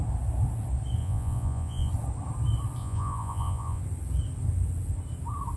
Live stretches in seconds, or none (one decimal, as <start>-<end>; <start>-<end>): 0.0-1.0; 1.9-2.8; 3.8-5.6